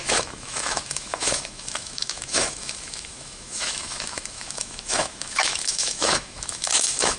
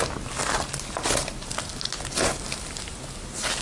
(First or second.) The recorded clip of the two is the second